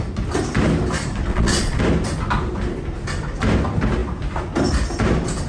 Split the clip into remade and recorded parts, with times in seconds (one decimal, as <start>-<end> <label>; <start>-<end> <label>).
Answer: 0.0-1.3 recorded; 1.3-1.8 remade; 1.8-5.5 recorded